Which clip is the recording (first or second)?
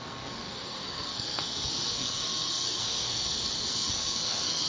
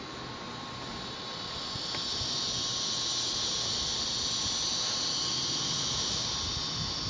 second